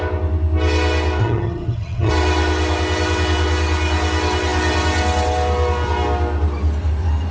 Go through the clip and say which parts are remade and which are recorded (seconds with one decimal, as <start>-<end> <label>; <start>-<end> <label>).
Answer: 0.0-1.2 recorded; 1.2-2.1 remade; 2.1-7.3 recorded